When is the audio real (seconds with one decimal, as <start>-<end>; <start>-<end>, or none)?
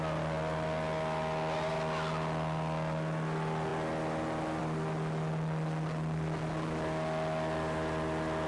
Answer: 0.0-8.5